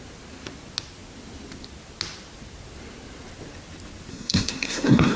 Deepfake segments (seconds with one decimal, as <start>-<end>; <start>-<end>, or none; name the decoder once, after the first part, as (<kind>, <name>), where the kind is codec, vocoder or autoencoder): 4.1-5.2 (codec, SNAC)